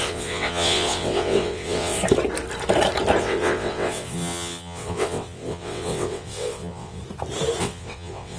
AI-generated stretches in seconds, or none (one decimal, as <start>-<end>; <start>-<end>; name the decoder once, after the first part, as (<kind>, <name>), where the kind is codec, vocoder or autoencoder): 0.0-2.0 (vocoder, WaveNeXt); 3.2-7.0; 7.6-8.4